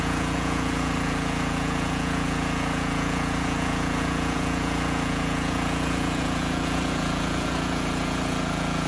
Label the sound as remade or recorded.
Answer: remade